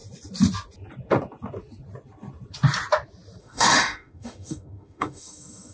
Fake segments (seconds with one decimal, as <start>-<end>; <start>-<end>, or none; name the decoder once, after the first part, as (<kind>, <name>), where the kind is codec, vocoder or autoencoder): 3.4-5.7 (autoencoder, DAC-VAE)